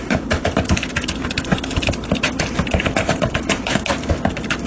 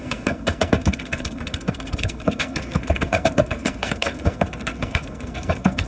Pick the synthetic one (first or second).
second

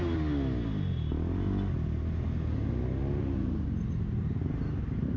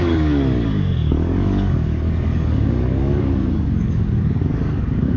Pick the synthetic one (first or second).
second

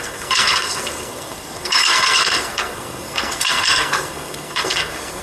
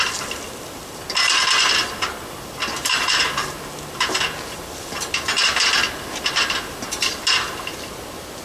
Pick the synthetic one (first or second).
first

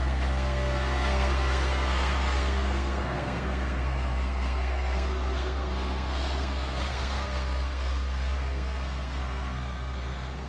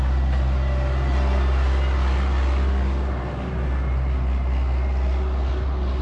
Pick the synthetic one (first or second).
first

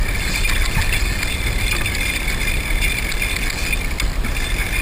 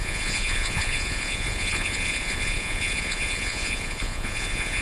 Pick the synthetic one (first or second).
second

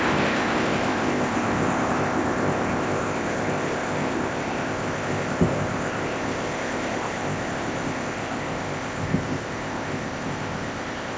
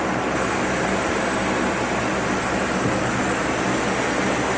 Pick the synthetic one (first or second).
first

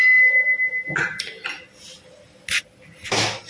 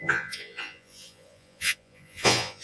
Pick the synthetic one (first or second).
second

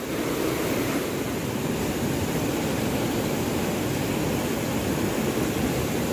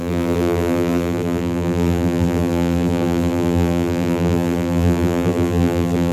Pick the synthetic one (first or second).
second